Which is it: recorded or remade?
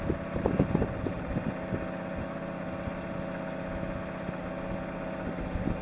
recorded